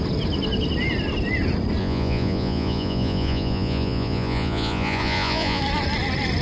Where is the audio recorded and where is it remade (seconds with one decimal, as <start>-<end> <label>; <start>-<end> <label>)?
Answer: 0.0-1.8 recorded; 1.8-5.6 remade; 5.6-6.4 recorded